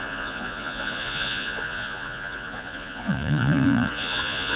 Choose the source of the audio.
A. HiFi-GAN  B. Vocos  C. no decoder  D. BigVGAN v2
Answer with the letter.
B